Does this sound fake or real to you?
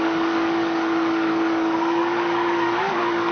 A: fake